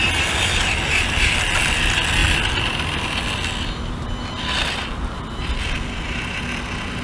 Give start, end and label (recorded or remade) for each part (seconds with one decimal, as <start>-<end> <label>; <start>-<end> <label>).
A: 0.0-7.0 recorded